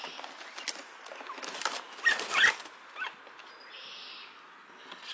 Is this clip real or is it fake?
real